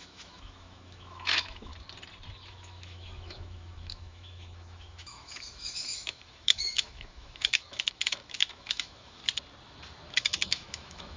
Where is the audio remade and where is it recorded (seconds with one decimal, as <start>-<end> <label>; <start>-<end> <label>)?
0.0-1.7 remade; 1.7-2.5 recorded; 2.5-9.2 remade; 9.2-10.1 recorded; 10.1-11.2 remade

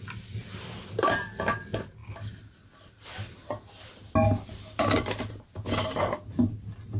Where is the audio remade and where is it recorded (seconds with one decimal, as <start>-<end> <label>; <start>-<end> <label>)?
0.0-7.0 recorded